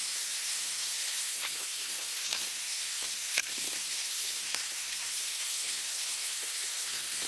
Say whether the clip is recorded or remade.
remade